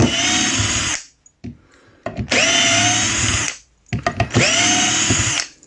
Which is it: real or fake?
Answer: real